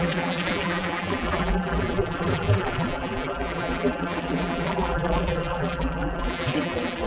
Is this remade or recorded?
remade